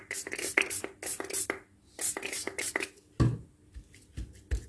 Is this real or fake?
real